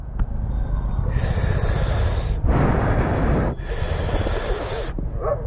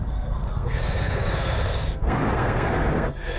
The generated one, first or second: second